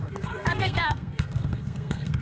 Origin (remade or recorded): remade